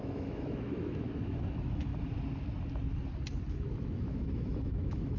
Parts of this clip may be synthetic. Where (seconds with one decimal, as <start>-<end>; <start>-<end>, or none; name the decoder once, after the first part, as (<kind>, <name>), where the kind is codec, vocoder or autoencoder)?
0.0-1.9 (autoencoder, DAC-VAE); 3.5-5.2

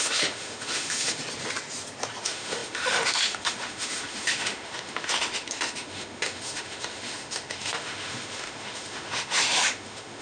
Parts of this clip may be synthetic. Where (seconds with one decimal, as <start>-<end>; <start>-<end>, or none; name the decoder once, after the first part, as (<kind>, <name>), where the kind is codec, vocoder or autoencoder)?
0.0-1.2 (autoencoder, DAC-VAE); 2.2-10.2

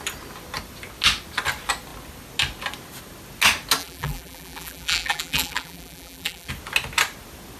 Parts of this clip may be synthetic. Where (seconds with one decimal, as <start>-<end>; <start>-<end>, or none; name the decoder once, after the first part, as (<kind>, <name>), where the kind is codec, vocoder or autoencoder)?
3.8-6.5 (vocoder, BigVGAN v2)